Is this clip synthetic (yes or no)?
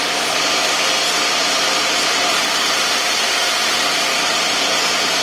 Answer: no